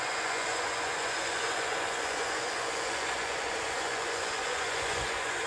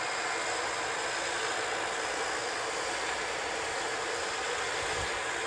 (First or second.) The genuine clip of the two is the second